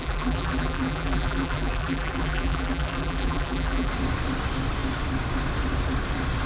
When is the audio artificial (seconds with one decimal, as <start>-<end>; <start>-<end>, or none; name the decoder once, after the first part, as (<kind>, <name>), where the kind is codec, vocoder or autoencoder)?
0.0-3.9 (vocoder, BigVGAN v2)